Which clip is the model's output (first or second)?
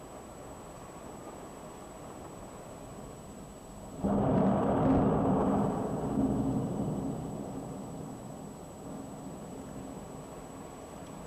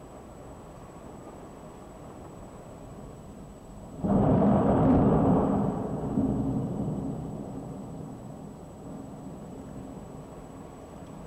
second